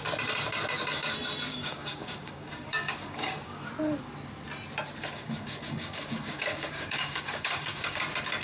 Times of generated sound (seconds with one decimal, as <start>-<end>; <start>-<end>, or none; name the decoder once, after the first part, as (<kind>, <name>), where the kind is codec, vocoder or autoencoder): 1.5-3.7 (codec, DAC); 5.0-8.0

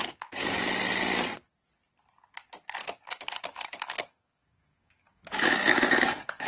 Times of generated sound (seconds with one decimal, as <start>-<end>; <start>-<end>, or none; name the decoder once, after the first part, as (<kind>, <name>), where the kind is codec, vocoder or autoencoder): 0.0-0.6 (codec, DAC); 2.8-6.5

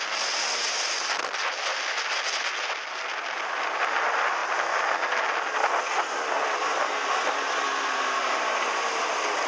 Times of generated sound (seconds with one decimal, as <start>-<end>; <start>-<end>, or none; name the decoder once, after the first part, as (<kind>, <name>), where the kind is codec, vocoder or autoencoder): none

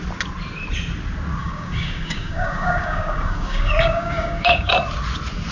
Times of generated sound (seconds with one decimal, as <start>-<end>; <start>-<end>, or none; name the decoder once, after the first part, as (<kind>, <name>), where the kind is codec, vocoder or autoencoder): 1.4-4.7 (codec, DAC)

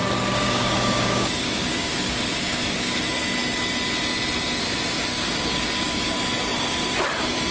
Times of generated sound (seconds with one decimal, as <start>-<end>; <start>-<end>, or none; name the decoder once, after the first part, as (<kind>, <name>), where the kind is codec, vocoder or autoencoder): 0.0-3.0 (codec, DAC); 5.1-6.1

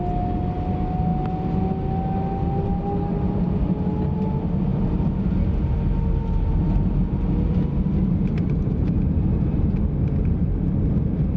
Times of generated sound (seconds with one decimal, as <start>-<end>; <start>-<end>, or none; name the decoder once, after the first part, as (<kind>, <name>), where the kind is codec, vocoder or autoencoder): none

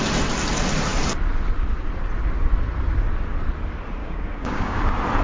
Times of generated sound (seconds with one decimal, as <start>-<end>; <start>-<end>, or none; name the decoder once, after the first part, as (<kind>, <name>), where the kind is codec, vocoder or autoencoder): 4.0-4.8 (codec, DAC)

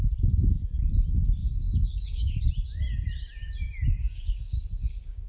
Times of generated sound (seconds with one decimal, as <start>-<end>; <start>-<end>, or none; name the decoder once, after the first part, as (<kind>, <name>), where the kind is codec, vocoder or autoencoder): 1.4-2.4 (codec, DAC); 4.0-5.3